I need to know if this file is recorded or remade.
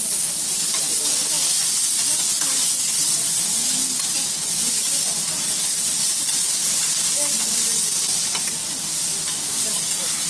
recorded